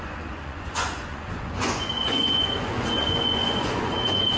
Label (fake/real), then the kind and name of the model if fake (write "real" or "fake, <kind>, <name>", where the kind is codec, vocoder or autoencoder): fake, vocoder, Vocos